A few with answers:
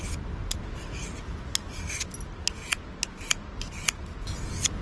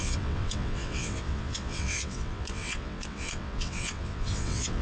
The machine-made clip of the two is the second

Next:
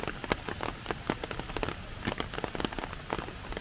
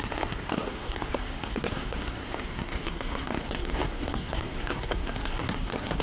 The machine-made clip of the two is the second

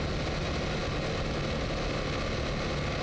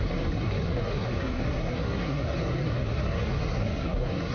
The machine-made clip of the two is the second